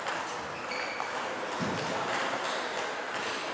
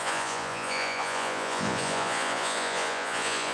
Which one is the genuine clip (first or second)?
first